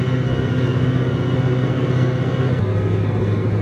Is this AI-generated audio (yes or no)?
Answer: yes